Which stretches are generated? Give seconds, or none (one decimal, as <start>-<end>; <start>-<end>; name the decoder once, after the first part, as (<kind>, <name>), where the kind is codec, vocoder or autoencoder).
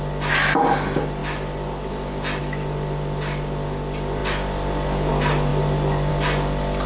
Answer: none